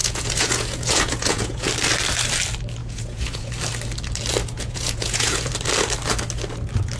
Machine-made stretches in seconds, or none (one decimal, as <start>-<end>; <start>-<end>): 0.0-1.7; 2.8-3.5; 4.4-5.5